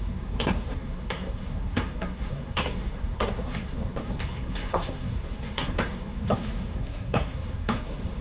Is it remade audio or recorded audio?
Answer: remade